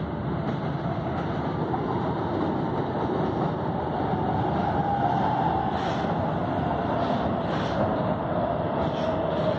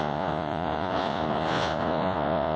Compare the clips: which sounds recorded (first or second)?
first